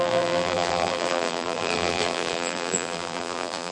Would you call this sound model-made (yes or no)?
yes